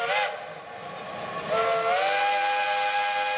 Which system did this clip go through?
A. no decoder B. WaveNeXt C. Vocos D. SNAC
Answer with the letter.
A